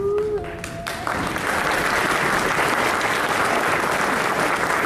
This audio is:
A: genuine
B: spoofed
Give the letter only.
A